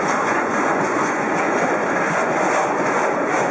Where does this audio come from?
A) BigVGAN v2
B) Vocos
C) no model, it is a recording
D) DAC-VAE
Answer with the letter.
B